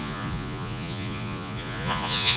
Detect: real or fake fake